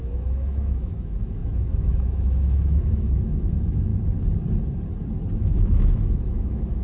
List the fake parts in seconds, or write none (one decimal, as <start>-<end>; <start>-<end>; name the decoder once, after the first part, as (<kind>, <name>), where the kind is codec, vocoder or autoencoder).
0.0-3.9 (autoencoder, DAC-VAE); 5.4-6.8